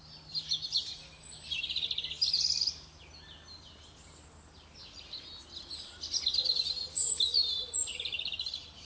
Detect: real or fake real